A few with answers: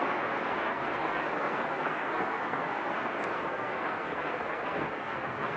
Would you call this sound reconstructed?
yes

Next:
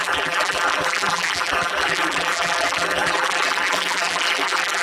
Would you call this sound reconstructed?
yes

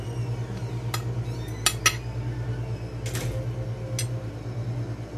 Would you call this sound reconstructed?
no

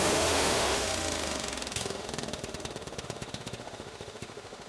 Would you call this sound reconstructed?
yes